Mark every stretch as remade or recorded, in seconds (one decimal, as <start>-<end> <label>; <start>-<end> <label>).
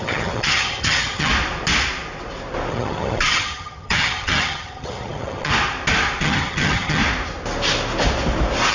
0.0-1.3 remade; 1.3-2.7 recorded; 2.7-5.5 remade; 5.5-6.2 recorded; 6.2-7.0 remade; 7.0-8.7 recorded